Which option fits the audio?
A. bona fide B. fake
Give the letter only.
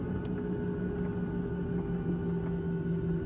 A